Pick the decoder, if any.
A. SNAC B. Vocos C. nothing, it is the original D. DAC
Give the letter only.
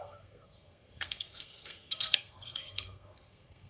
A